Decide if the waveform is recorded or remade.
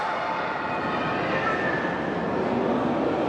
recorded